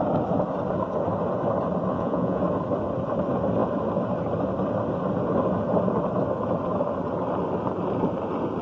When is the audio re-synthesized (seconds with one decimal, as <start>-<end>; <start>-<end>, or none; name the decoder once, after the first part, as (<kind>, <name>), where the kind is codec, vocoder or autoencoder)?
1.9-2.4 (vocoder, Vocos)